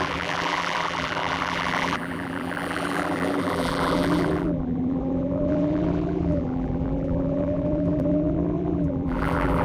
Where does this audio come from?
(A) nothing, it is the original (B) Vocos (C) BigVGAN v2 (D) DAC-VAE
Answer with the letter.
C